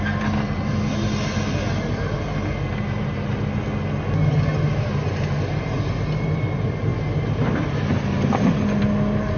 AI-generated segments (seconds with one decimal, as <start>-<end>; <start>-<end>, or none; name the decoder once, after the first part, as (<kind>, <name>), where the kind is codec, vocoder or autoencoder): none